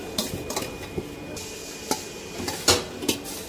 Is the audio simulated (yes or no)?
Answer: no